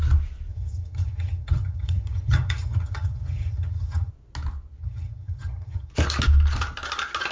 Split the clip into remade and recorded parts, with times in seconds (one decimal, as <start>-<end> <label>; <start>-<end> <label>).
0.0-0.5 recorded; 0.5-4.1 remade; 4.1-4.8 recorded; 4.8-5.9 remade; 5.9-7.3 recorded